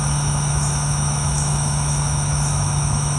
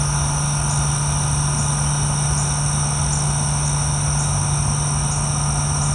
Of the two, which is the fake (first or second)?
first